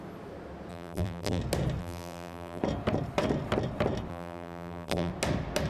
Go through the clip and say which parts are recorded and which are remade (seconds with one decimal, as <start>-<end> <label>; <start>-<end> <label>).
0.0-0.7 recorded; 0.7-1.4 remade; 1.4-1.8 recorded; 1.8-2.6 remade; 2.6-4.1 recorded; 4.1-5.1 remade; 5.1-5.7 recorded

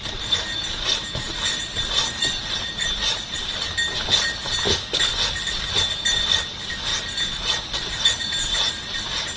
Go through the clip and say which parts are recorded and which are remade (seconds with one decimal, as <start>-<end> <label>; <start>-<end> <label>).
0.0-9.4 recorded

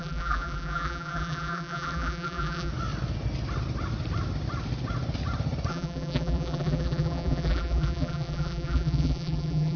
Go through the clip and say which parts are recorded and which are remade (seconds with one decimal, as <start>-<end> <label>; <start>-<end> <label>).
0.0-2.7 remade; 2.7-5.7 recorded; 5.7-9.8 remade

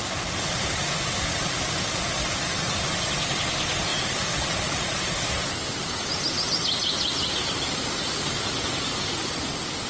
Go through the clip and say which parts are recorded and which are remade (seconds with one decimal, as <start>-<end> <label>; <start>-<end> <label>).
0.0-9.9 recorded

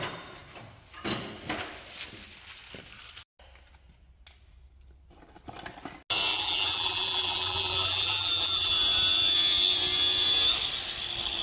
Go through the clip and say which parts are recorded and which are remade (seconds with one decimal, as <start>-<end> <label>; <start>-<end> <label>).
0.0-6.3 recorded; 6.3-8.7 remade; 8.7-11.4 recorded

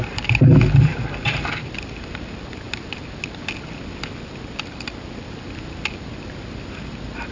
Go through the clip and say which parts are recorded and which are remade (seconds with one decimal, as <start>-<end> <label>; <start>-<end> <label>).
0.0-0.9 recorded; 0.9-1.7 remade; 1.7-7.3 recorded

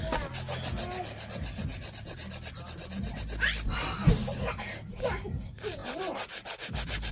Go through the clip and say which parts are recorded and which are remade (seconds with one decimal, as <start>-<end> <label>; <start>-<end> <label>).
0.0-5.8 recorded; 5.8-7.1 remade